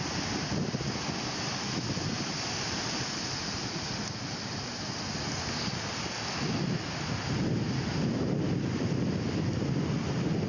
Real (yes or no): yes